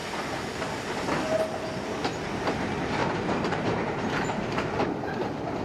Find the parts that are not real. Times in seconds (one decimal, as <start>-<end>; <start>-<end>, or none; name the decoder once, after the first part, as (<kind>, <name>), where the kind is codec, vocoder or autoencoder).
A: 3.0-4.7 (vocoder, BigVGAN v2)